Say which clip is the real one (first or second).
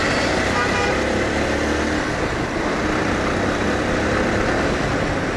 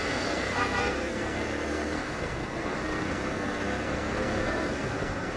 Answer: first